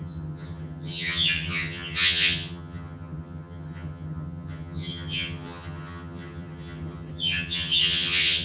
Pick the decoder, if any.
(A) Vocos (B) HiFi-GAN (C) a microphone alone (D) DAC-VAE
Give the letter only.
B